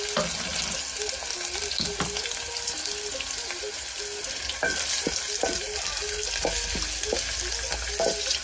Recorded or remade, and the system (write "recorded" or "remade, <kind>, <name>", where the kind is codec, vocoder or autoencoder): recorded